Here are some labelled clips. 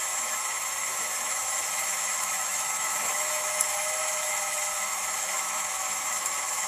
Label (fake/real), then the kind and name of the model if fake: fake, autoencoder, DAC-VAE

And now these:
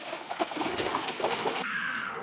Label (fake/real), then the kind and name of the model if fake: fake, autoencoder, DAC-VAE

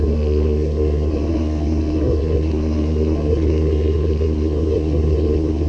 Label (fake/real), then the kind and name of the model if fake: fake, codec, SNAC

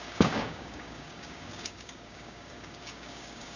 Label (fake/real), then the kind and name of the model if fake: fake, codec, DAC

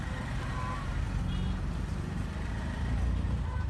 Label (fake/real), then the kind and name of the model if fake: fake, vocoder, BigVGAN v2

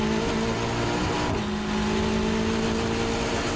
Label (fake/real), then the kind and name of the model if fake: real